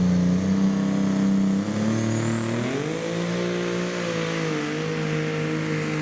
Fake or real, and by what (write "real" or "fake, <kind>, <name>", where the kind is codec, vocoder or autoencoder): real